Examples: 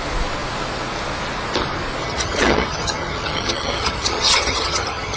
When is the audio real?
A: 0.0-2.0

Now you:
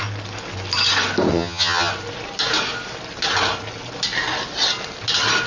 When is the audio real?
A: 0.0-1.3; 1.9-5.5

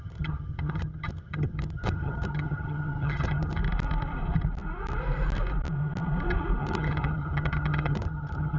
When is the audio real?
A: 3.6-6.6

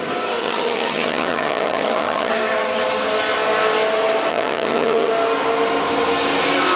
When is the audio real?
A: 0.0-0.4; 2.3-4.3; 5.1-6.8

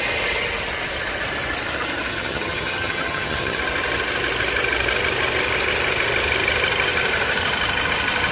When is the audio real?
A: 0.0-2.1; 3.6-8.3

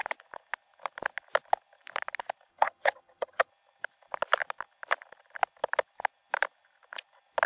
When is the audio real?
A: 0.0-2.5; 3.5-7.5

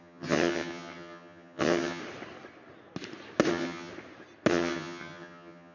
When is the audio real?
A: 2.0-3.5; 3.9-4.5